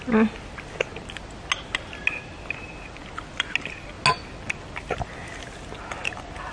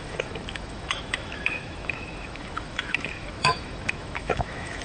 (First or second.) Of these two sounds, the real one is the first